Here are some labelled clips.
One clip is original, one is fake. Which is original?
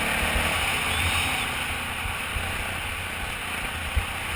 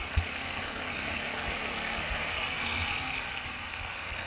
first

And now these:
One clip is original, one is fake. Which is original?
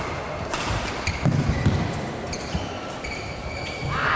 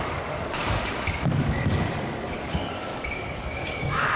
first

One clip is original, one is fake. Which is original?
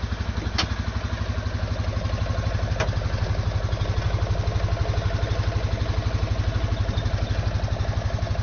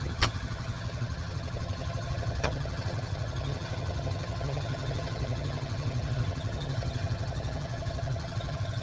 first